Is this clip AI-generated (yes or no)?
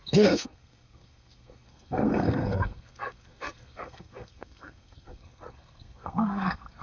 yes